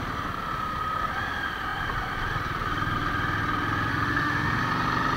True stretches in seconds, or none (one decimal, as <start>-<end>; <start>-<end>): 0.0-3.9; 4.6-5.2